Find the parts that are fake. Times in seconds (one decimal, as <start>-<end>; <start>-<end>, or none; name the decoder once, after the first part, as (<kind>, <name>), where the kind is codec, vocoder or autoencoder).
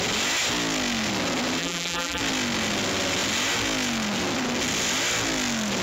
1.6-2.2 (vocoder, BigVGAN v2)